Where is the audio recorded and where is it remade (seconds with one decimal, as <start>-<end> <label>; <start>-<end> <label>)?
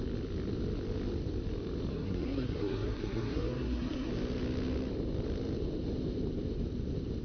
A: 0.0-1.9 recorded; 1.9-4.1 remade; 4.1-7.2 recorded